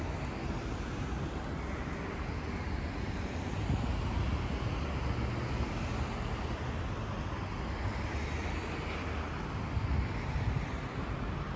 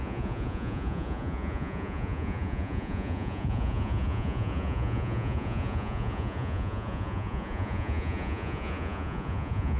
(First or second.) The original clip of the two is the first